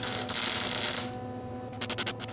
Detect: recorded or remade recorded